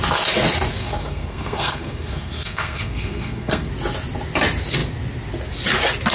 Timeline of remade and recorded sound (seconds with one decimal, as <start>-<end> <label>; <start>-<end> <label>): 0.0-0.8 recorded; 0.8-3.7 remade; 3.7-6.1 recorded